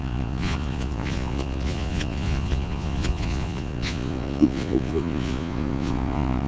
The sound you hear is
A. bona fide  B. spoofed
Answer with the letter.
B